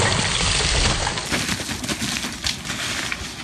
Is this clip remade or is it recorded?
recorded